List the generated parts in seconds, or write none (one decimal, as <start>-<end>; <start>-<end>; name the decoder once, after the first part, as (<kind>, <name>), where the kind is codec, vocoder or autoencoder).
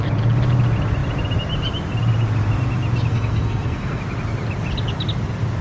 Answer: 3.1-4.0 (codec, SNAC)